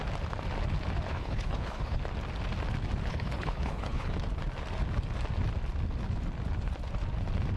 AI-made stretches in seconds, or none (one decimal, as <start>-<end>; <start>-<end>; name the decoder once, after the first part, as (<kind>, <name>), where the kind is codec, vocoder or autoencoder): 1.1-2.0 (codec, HILCodec); 3.1-4.1